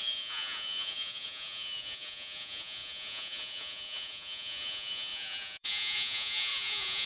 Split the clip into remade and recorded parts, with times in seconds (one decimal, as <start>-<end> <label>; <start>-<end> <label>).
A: 0.0-7.1 remade